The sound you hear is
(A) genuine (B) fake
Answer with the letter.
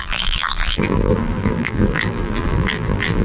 B